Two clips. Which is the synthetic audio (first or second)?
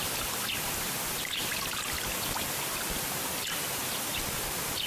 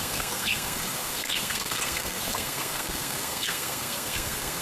second